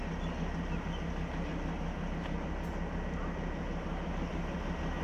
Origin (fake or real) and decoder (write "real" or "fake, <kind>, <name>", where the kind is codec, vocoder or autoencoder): real